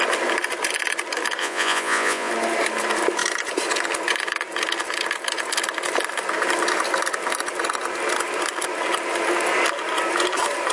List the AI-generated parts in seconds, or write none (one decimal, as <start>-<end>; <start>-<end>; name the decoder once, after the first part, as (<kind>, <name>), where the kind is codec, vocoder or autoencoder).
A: 1.4-2.3 (vocoder, Vocos)